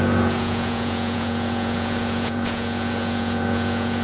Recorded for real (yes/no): no